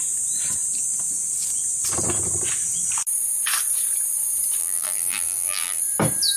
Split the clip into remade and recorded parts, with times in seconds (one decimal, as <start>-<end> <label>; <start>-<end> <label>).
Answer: 0.0-4.6 recorded; 4.6-5.8 remade; 5.8-6.4 recorded